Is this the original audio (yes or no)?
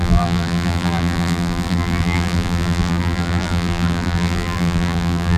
no